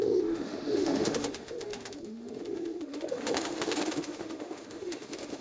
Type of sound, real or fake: fake